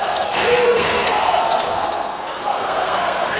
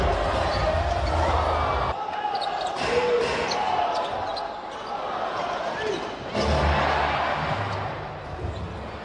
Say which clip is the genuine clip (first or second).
second